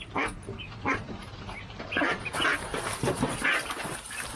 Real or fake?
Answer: fake